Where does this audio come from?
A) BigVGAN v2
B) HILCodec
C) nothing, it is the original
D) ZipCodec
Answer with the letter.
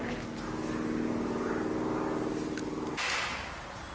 C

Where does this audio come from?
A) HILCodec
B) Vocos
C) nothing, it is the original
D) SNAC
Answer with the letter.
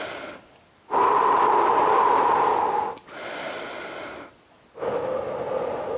C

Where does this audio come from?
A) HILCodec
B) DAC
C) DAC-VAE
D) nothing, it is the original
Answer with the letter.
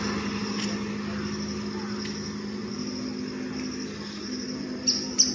D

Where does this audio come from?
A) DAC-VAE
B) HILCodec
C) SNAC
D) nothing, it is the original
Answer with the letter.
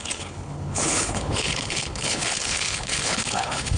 B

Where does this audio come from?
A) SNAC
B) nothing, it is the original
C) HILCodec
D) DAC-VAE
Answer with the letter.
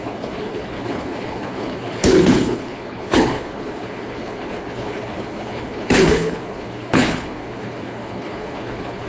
C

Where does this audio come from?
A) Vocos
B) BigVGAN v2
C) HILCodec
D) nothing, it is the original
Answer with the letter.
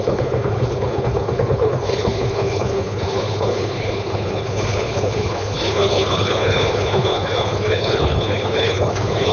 C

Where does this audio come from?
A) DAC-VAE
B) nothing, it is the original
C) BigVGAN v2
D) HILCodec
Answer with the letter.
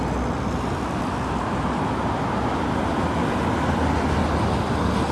B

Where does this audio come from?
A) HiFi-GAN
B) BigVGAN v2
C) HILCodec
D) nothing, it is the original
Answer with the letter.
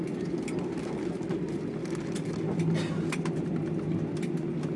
D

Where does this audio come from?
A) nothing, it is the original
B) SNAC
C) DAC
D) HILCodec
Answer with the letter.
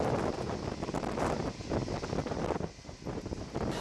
A